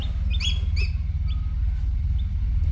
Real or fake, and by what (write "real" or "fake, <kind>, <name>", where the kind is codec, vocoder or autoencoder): real